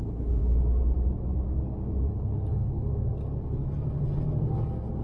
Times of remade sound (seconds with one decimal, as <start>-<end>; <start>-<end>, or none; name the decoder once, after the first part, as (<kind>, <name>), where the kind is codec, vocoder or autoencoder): 0.0-0.4 (codec, HILCodec); 2.1-2.9